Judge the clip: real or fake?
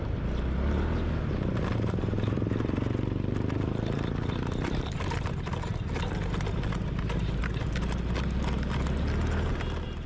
real